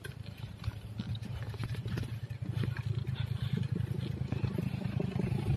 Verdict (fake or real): real